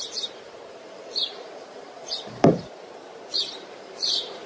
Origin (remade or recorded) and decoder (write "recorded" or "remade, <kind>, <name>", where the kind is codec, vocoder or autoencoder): remade, vocoder, BigVGAN v2